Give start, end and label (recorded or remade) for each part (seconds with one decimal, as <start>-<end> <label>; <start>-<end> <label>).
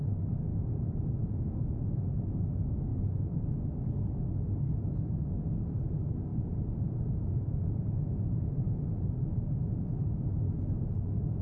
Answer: 0.0-0.5 recorded; 0.5-2.1 remade; 2.1-6.3 recorded; 6.3-9.0 remade; 9.0-11.4 recorded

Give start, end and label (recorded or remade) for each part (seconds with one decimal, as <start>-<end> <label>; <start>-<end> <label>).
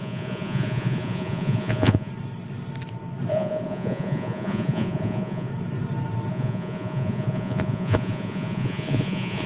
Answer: 0.0-2.1 remade; 2.1-3.3 recorded; 3.3-5.5 remade; 5.5-6.3 recorded; 6.3-9.5 remade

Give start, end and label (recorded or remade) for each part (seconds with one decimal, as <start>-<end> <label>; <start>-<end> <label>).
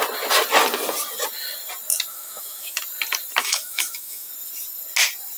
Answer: 0.0-2.1 recorded; 2.1-2.8 remade; 2.8-3.4 recorded; 3.4-4.3 remade; 4.3-5.4 recorded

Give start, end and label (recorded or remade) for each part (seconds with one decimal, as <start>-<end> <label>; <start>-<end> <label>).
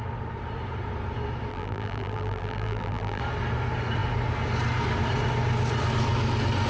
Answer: 0.0-1.5 recorded; 1.5-3.2 remade; 3.2-6.7 recorded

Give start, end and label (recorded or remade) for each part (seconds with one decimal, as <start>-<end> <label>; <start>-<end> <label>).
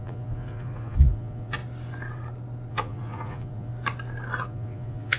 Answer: 0.0-1.6 remade; 1.6-2.7 recorded; 2.7-3.7 remade; 3.7-4.4 recorded; 4.4-5.2 remade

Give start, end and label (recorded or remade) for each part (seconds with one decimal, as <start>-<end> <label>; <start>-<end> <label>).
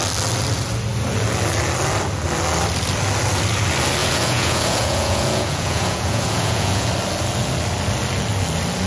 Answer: 0.0-4.0 recorded; 4.0-6.9 remade; 6.9-8.9 recorded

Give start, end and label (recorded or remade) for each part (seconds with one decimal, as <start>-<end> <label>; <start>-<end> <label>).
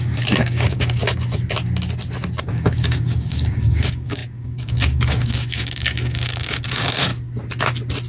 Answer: 0.0-1.0 remade; 1.0-2.4 recorded; 2.4-7.1 remade; 7.1-8.1 recorded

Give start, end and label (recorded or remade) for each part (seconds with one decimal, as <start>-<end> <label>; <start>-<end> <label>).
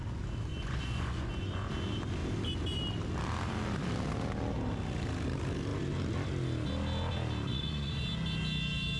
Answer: 0.0-0.5 recorded; 0.5-1.7 remade; 1.7-7.5 recorded; 7.5-8.0 remade; 8.0-9.0 recorded